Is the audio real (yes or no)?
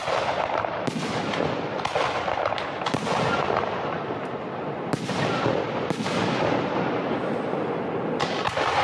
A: yes